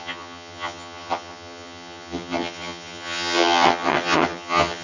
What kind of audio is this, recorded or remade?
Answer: remade